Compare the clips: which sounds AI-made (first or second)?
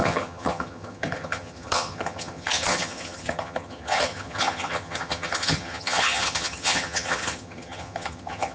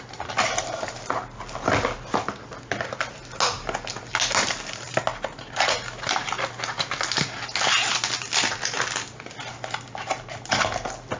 first